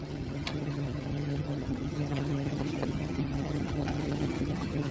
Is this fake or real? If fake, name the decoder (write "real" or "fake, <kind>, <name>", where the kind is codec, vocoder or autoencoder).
fake, vocoder, HiFi-GAN